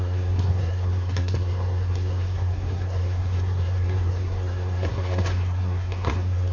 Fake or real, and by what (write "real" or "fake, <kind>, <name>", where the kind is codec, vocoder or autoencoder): fake, codec, SNAC